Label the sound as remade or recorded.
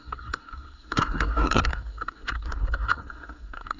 remade